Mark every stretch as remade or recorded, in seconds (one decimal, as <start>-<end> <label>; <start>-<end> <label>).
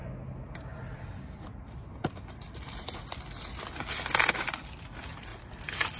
0.0-0.7 recorded; 0.7-3.4 remade; 3.4-5.3 recorded; 5.3-6.0 remade